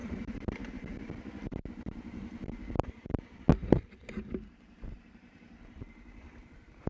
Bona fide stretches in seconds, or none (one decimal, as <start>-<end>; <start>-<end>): 0.7-3.6; 6.5-6.9